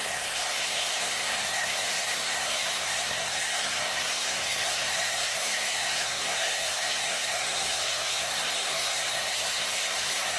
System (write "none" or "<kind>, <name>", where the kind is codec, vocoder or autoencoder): codec, SNAC